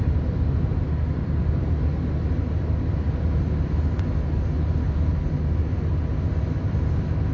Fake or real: real